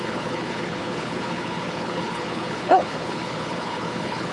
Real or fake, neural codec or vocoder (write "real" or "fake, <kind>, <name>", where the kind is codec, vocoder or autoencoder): fake, codec, HILCodec